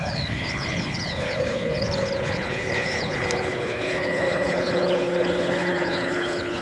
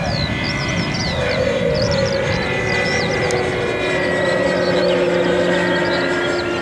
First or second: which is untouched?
second